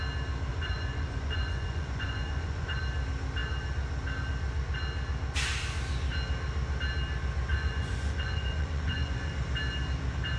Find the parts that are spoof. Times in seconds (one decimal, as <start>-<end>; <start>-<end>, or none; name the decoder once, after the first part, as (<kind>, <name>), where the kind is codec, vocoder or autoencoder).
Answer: 0.5-2.8 (vocoder, Vocos); 7.5-9.3